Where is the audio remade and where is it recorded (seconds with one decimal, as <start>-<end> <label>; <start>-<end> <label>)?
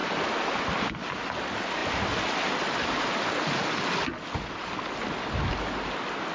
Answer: 0.0-6.3 recorded